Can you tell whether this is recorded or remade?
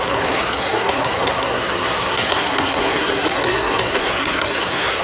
remade